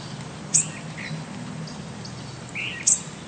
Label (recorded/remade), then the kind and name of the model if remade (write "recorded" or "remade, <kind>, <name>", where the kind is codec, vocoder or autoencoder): recorded